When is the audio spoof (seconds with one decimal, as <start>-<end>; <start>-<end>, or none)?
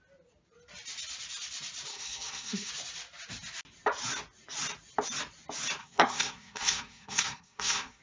1.9-2.7; 5.8-8.0